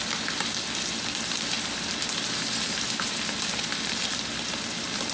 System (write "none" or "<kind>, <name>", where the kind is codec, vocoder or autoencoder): none